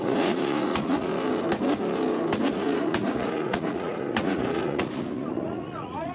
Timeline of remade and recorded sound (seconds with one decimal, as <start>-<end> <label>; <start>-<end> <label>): 0.0-1.1 remade; 1.1-2.5 recorded; 2.5-6.1 remade